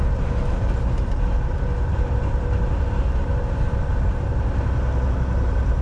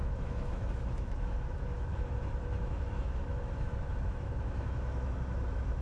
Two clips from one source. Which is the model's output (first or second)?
second